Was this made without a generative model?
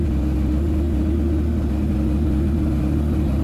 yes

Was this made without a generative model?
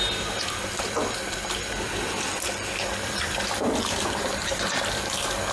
no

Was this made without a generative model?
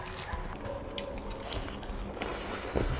yes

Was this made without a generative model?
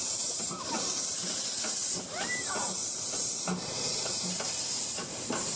no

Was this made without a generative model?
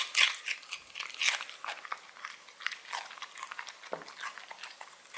yes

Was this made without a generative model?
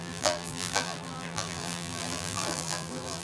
no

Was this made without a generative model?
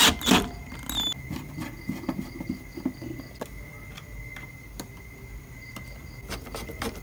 yes